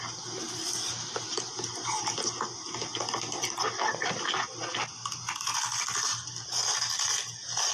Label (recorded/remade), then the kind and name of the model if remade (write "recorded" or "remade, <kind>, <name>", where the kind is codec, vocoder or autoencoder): recorded